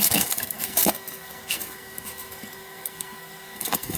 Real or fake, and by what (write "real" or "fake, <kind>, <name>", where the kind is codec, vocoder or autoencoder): fake, codec, SNAC